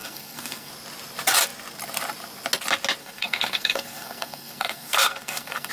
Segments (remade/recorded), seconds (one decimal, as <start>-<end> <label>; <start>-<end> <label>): 0.0-0.7 remade; 0.7-3.0 recorded; 3.0-5.7 remade